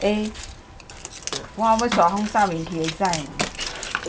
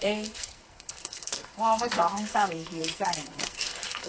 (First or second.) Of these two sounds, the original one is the first